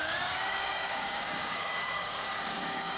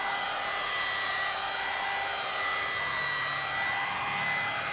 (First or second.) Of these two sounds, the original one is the second